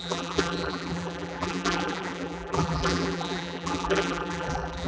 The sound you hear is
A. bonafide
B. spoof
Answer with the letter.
B